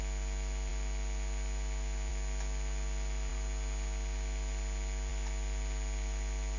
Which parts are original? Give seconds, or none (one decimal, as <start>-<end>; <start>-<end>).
0.0-6.6